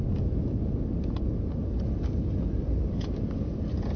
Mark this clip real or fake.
real